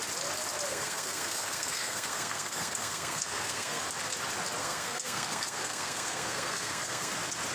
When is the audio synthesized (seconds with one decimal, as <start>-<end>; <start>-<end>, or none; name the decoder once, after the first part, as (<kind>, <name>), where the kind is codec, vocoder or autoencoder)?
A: 0.7-3.8 (codec, SNAC); 4.6-7.1